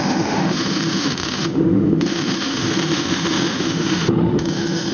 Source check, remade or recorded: remade